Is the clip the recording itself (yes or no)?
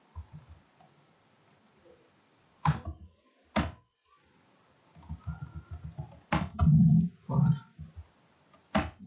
yes